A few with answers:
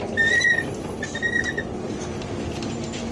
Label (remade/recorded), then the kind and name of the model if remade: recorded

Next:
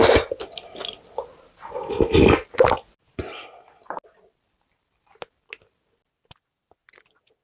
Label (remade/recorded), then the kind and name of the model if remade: recorded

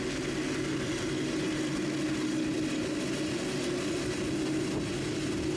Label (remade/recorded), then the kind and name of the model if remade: recorded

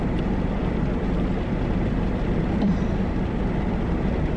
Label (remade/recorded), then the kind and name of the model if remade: remade, vocoder, BigVGAN v2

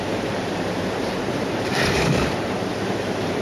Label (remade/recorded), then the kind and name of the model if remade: remade, vocoder, BigVGAN v2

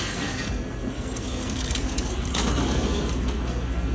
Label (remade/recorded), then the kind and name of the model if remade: remade, codec, SNAC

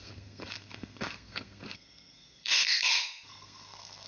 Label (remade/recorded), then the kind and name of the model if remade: remade, codec, SNAC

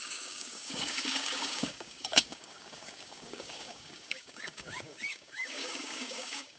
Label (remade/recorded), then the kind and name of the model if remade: remade, codec, DAC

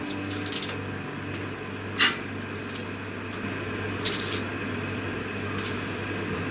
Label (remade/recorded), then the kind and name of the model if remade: recorded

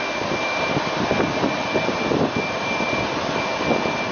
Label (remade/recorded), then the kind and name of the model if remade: recorded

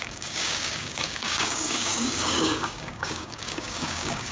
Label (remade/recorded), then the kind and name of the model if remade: remade, codec, DAC